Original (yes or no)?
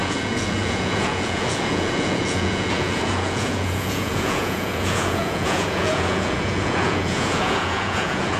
no